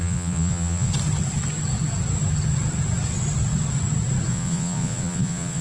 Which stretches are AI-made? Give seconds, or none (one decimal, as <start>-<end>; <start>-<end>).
0.0-0.9; 4.3-5.6